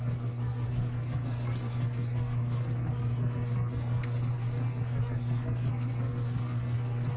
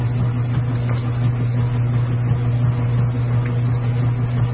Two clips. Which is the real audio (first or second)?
second